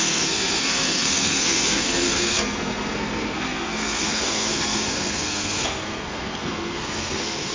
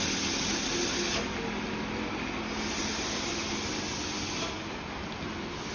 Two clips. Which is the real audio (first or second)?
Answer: second